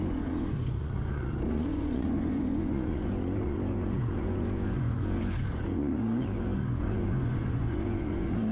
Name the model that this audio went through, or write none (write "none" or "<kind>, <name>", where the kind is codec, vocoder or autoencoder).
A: vocoder, Vocos